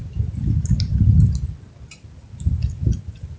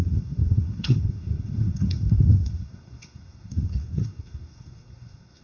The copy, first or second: second